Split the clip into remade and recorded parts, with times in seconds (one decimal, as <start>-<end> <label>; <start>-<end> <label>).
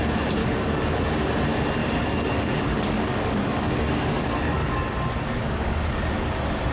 0.0-0.4 recorded; 0.4-1.0 remade; 1.0-1.8 recorded; 1.8-4.8 remade; 4.8-5.4 recorded; 5.4-6.0 remade; 6.0-6.7 recorded